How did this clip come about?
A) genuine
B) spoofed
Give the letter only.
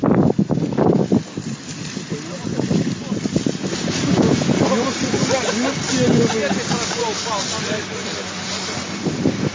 A